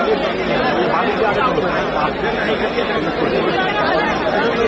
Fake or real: real